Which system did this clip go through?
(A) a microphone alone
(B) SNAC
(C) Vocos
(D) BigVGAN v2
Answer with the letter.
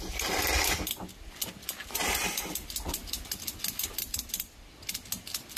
A